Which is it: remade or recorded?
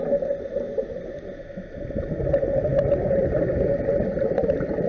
recorded